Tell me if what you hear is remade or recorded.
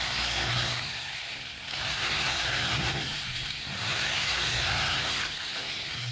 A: remade